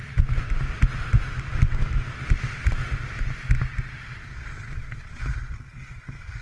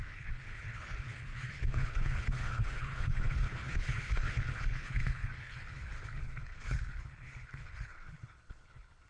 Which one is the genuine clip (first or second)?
first